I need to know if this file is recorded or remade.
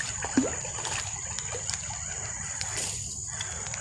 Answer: recorded